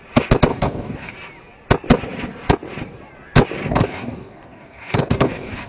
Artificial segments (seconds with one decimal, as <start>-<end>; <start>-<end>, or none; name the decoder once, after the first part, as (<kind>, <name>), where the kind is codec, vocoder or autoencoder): 0.5-1.1 (codec, DAC); 3.7-5.7